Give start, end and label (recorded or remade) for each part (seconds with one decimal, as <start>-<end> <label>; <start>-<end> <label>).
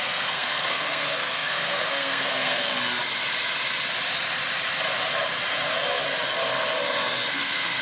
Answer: 0.0-2.7 remade; 2.7-7.3 recorded; 7.3-7.8 remade